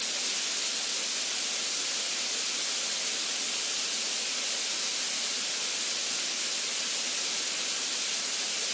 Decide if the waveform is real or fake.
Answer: real